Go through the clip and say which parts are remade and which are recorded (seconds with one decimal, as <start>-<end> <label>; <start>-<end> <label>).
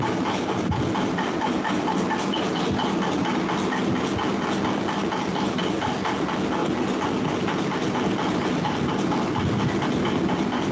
0.0-10.7 recorded